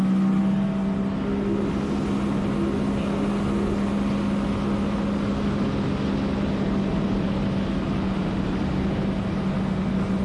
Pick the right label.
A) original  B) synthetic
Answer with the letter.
A